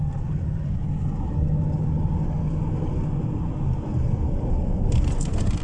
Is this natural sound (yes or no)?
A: yes